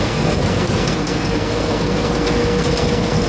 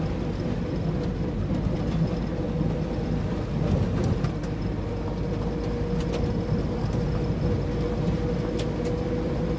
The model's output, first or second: first